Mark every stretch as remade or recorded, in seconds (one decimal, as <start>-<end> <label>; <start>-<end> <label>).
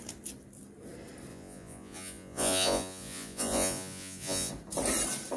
0.0-1.3 recorded; 1.3-4.5 remade; 4.5-5.4 recorded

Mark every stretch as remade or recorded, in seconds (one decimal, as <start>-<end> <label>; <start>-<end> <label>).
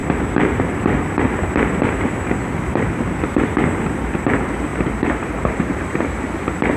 0.0-4.7 recorded; 4.7-6.0 remade; 6.0-6.8 recorded